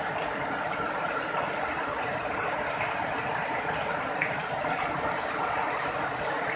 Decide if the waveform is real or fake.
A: real